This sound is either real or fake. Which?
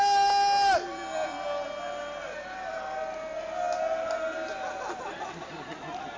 real